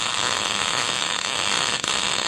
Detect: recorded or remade remade